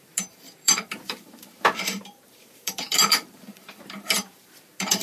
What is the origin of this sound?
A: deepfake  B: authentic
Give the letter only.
A